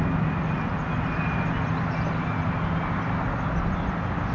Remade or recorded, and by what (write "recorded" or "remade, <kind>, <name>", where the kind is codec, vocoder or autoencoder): recorded